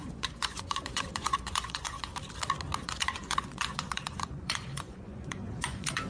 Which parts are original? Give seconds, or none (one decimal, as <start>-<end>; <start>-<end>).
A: 2.1-2.8